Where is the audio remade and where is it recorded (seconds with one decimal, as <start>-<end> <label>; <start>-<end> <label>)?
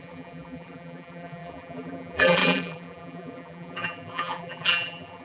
0.0-5.2 remade